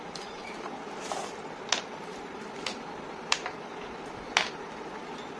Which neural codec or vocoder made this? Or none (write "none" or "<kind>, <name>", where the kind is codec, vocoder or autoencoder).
none